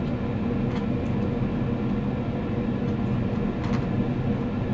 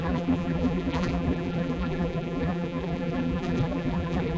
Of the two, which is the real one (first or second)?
first